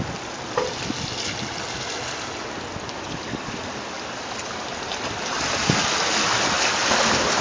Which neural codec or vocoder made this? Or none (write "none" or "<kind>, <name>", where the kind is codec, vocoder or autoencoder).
none